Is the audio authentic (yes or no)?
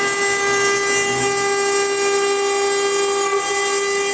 yes